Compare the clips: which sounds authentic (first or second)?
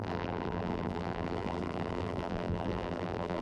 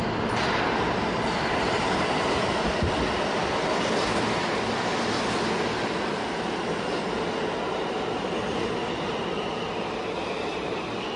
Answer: second